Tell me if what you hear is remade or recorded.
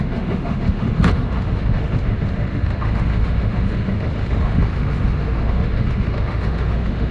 remade